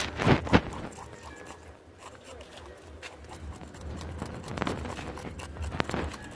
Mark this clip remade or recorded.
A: recorded